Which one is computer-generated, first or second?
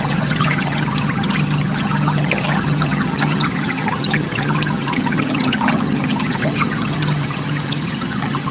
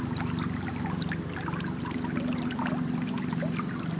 first